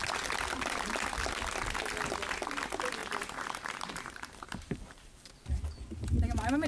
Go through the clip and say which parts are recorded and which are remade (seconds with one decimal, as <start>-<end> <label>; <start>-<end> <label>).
0.0-3.0 recorded; 3.0-5.6 remade; 5.6-6.7 recorded